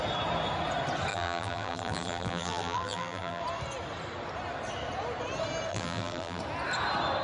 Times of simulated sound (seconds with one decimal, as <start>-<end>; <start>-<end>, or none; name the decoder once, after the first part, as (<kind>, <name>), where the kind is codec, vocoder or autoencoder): 1.1-3.4 (vocoder, BigVGAN v2); 5.7-6.4